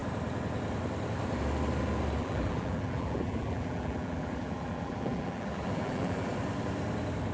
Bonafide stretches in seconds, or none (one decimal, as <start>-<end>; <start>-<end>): 0.0-2.2; 6.3-7.3